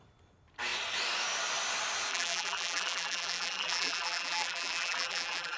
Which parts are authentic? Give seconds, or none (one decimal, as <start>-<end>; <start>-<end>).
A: 0.0-2.1